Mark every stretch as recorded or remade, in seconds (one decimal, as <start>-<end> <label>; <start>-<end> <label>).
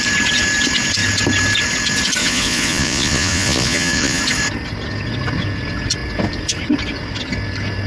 0.0-2.2 recorded; 2.2-4.2 remade; 4.2-7.9 recorded